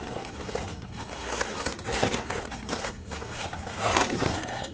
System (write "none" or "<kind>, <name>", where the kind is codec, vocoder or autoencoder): codec, SNAC